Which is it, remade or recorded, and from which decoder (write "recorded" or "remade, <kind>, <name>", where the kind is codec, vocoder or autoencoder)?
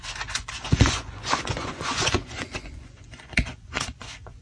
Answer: remade, vocoder, Vocos